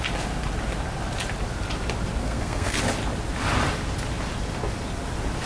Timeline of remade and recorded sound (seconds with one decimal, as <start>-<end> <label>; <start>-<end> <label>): 0.0-2.2 recorded; 2.2-2.8 remade; 2.8-5.5 recorded